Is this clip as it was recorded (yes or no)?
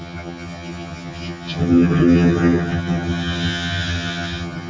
no